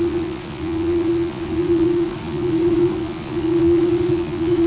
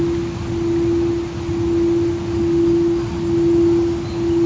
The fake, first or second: first